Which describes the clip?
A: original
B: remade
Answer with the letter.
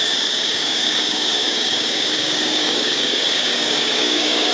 B